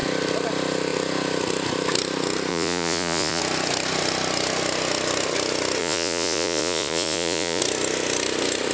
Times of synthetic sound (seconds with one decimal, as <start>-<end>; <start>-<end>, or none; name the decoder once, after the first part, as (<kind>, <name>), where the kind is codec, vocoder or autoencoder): 2.5-3.4 (vocoder, Vocos); 5.8-7.6